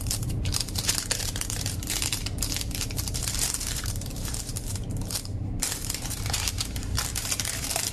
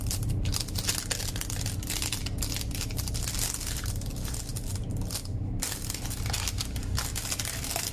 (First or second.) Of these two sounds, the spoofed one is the first